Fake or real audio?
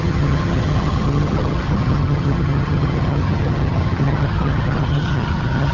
fake